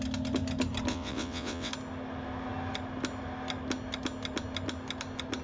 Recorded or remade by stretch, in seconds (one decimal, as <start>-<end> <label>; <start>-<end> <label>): 0.0-0.9 recorded; 0.9-1.7 remade; 1.7-5.4 recorded